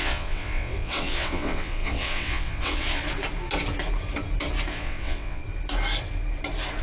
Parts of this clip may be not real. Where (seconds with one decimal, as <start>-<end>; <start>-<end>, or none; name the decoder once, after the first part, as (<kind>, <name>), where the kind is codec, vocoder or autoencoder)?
0.0-3.0 (vocoder, WaveNeXt); 4.7-5.4

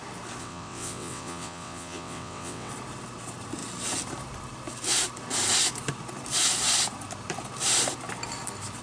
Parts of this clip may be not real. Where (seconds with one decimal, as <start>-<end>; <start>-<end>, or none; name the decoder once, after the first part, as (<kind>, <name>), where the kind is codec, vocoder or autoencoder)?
0.4-2.7 (vocoder, WaveNeXt)